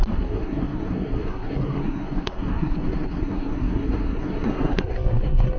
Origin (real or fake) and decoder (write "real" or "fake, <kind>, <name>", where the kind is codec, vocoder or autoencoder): fake, codec, SNAC